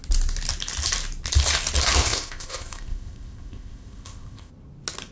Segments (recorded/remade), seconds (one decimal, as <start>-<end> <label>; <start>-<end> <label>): 0.0-2.0 recorded; 2.0-4.5 remade; 4.5-5.1 recorded